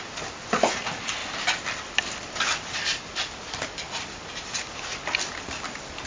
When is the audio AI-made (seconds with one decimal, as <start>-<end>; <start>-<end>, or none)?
none